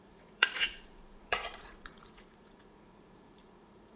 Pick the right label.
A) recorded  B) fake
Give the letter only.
B